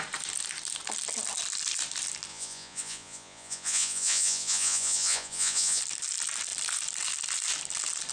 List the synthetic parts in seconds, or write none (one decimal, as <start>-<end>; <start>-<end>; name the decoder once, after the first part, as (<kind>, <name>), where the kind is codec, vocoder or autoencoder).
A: 2.3-5.8 (vocoder, Vocos)